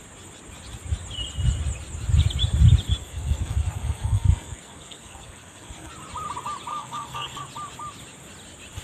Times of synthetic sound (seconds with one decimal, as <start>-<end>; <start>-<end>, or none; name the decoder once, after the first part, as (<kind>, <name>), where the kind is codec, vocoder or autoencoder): 3.0-5.9 (codec, SNAC); 6.7-7.4